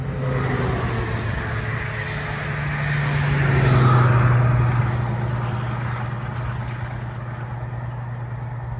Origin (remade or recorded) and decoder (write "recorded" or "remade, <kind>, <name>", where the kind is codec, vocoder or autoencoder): recorded